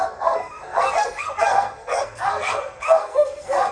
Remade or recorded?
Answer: remade